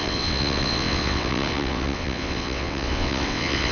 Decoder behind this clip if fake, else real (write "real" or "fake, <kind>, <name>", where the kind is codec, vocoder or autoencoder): fake, vocoder, WaveNeXt